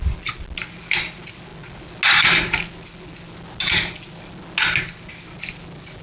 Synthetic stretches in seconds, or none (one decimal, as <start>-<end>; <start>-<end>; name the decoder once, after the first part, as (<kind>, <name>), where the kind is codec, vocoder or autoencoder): none

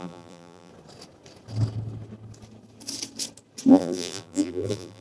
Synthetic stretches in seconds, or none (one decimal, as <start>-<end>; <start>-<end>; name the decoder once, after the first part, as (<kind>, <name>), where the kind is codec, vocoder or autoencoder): 0.0-0.7 (vocoder, BigVGAN v2); 3.7-5.0